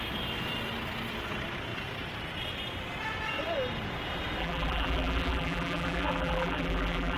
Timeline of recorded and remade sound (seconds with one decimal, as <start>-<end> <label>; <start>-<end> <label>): 0.0-4.4 recorded; 4.4-7.2 remade

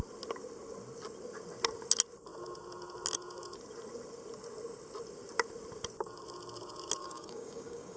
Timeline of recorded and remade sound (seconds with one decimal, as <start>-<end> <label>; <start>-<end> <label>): 0.0-7.0 recorded; 7.0-8.0 remade

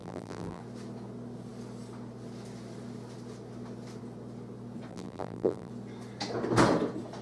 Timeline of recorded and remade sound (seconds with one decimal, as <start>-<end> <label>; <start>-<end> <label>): 0.0-0.6 remade; 0.6-4.9 recorded; 4.9-5.7 remade; 5.7-7.2 recorded

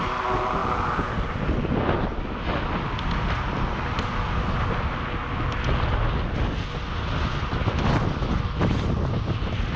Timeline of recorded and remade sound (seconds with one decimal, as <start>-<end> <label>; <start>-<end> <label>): 0.0-9.8 recorded

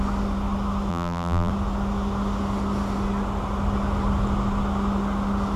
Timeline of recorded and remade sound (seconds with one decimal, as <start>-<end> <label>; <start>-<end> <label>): 0.0-0.9 recorded; 0.9-1.5 remade; 1.5-5.6 recorded

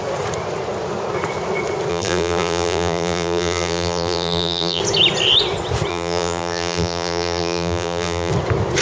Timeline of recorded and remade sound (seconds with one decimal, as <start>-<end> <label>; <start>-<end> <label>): 0.0-1.9 recorded; 1.9-4.8 remade; 4.8-5.9 recorded; 5.9-8.3 remade; 8.3-8.8 recorded